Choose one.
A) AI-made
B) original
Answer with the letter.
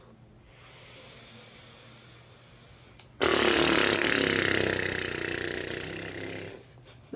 B